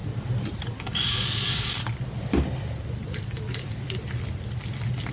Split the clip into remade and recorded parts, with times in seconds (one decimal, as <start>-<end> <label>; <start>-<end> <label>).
0.0-0.8 recorded; 0.8-1.8 remade; 1.8-5.1 recorded